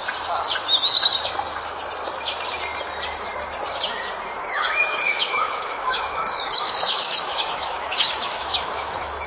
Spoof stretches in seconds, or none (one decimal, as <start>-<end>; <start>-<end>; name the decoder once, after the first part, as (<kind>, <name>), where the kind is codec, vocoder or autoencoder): 4.4-9.3 (autoencoder, DAC-VAE)